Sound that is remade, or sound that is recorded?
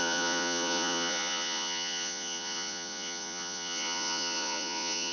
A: remade